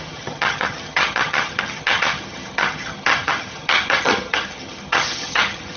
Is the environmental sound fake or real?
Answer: fake